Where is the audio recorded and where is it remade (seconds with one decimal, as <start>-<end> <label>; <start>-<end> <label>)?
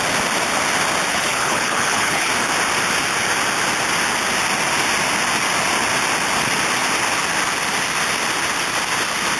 0.0-1.1 recorded; 1.1-2.3 remade; 2.3-9.4 recorded